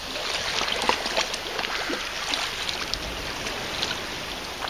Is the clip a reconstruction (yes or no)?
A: no